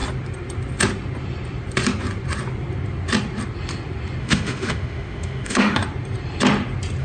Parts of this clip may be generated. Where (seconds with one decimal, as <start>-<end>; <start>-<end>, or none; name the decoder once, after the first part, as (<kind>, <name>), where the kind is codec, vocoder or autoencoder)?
4.2-5.8 (autoencoder, DAC-VAE)